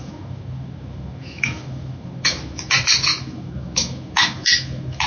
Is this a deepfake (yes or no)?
yes